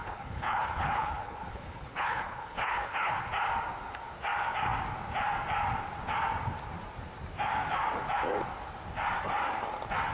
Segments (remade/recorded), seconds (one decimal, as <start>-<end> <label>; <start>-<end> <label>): 0.0-3.1 remade; 3.1-10.1 recorded